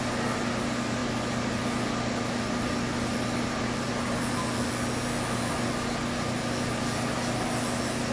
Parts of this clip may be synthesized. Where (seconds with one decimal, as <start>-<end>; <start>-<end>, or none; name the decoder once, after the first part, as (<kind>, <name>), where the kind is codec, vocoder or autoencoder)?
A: none